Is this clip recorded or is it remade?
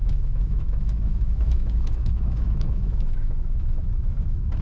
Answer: remade